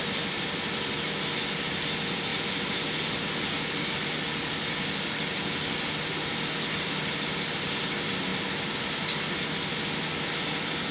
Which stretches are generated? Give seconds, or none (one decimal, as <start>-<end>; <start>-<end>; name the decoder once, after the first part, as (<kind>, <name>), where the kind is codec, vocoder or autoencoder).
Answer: none